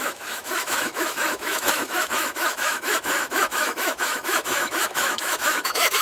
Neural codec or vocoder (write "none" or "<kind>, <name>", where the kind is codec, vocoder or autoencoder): autoencoder, DAC-VAE